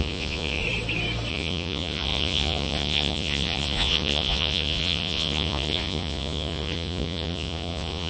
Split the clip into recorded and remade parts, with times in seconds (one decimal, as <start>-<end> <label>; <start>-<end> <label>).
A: 0.0-0.6 remade; 0.6-1.3 recorded; 1.3-8.1 remade